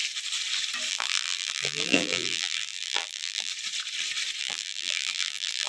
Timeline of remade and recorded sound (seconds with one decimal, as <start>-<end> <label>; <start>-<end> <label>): 0.0-0.9 recorded; 0.9-3.5 remade; 3.5-4.4 recorded; 4.4-5.7 remade